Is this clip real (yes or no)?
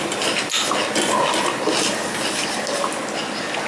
yes